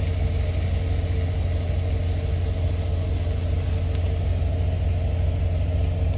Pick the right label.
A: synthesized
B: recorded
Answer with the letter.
B